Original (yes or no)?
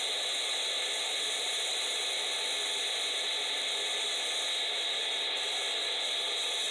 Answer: yes